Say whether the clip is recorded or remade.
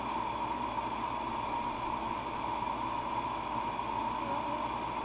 recorded